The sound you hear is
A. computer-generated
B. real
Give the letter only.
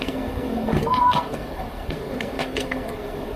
A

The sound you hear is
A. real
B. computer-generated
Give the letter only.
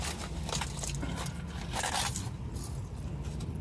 A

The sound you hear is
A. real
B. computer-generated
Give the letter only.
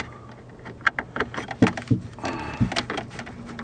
A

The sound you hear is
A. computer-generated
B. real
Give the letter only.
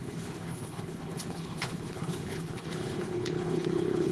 A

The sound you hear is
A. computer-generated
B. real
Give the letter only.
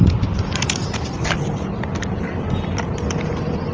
B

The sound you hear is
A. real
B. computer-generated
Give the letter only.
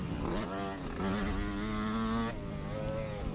A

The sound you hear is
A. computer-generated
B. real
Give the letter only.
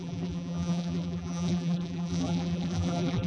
A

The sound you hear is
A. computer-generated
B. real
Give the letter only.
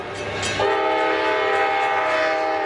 B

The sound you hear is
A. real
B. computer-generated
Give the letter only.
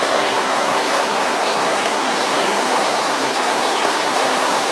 B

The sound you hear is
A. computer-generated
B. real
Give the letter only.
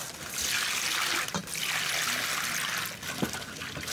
B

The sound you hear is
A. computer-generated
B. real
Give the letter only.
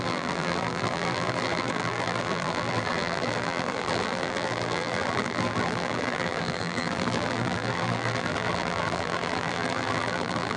A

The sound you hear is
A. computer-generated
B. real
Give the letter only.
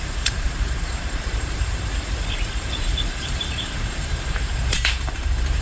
A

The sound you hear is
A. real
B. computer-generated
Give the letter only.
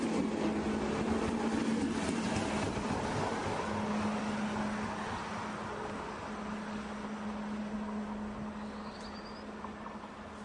A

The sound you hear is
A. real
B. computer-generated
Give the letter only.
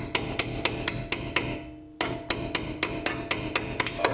A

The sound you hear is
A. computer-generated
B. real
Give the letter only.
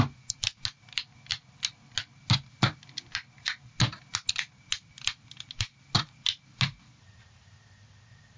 B